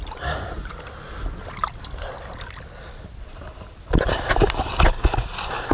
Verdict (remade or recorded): recorded